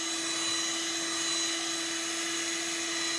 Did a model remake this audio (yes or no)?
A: no